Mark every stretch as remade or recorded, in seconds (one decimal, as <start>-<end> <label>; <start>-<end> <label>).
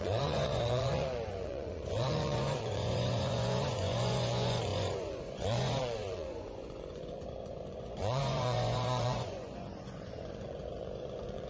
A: 0.0-11.5 remade